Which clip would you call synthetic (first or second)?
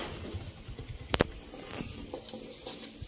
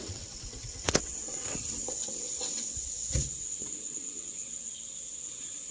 second